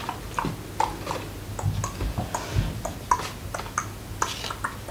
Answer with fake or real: real